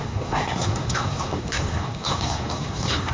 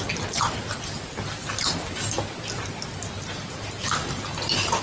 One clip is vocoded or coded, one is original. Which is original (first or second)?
second